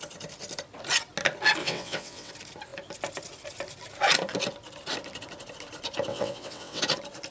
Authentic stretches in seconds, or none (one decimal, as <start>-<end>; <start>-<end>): 0.0-1.6; 2.3-6.1; 6.8-7.3